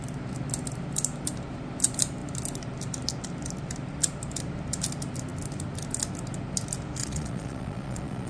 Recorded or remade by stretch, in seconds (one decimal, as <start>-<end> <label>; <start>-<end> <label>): 0.0-7.0 recorded; 7.0-8.3 remade